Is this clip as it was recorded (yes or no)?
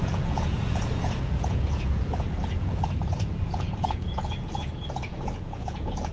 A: no